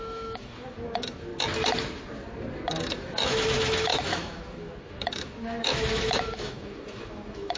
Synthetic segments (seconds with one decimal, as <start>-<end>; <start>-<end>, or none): 0.0-1.3; 2.7-7.6